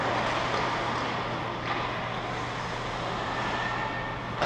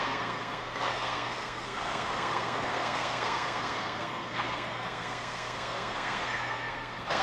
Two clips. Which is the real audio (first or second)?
first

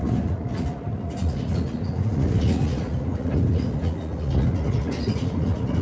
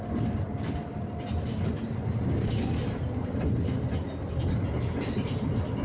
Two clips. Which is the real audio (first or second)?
second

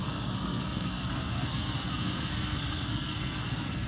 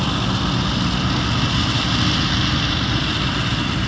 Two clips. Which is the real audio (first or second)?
second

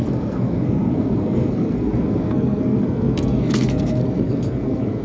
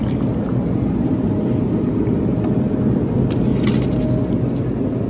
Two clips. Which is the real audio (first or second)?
second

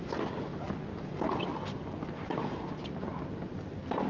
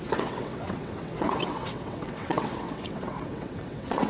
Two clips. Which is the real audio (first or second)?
first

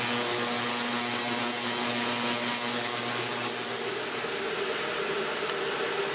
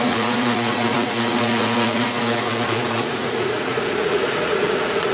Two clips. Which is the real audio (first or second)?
first